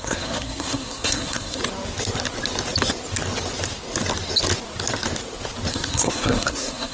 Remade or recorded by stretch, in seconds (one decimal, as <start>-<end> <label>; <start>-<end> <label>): 0.0-1.6 remade; 1.6-5.7 recorded; 5.7-6.9 remade